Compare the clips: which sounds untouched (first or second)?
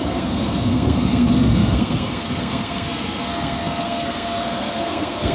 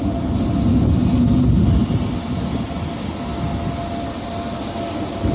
second